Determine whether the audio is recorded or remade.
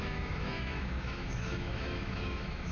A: remade